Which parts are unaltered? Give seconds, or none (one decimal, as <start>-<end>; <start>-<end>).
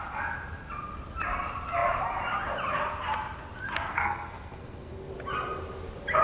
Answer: 0.0-3.9; 5.1-6.2